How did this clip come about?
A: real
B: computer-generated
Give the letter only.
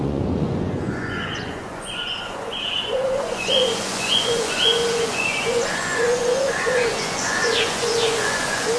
B